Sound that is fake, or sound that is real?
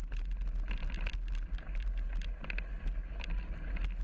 real